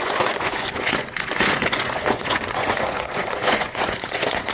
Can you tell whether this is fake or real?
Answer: fake